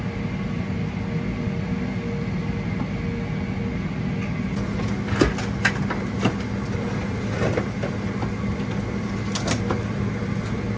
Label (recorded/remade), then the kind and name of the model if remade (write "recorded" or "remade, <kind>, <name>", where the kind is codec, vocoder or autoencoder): recorded